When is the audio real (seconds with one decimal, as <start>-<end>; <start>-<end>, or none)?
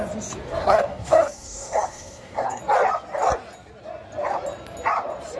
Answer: 0.0-0.6; 2.6-5.4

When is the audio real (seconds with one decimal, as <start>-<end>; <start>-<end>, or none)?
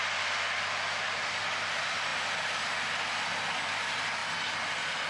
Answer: 0.0-5.1